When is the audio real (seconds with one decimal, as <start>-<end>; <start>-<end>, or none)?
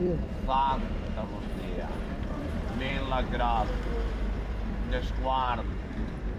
none